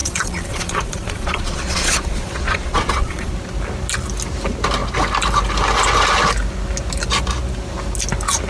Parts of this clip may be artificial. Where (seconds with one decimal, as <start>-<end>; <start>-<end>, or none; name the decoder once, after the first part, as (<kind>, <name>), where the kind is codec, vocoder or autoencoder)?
0.0-3.3 (vocoder, Vocos)